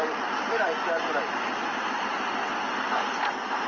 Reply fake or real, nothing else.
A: real